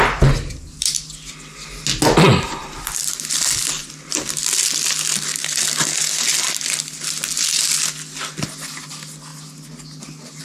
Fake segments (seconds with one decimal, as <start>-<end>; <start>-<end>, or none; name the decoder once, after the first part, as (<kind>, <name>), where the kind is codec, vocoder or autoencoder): none